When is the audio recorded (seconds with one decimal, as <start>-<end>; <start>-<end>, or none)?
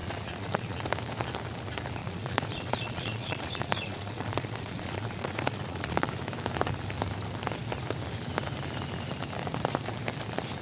0.9-2.0; 6.1-10.6